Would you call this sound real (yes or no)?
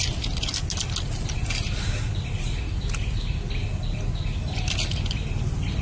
yes